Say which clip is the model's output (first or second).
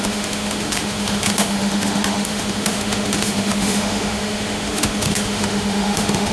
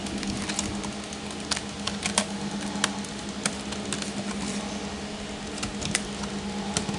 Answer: first